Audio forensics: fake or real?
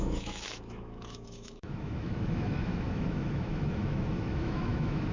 fake